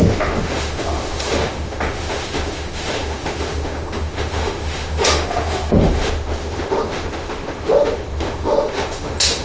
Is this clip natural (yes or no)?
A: no